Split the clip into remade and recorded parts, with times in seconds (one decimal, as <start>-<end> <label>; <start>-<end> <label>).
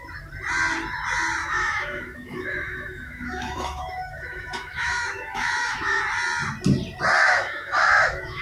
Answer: 0.0-1.4 recorded; 1.4-6.0 remade; 6.0-7.2 recorded; 7.2-8.4 remade